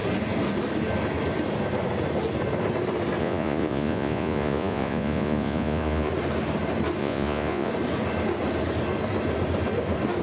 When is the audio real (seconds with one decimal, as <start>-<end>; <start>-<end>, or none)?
0.0-3.2; 6.1-7.0; 7.7-10.2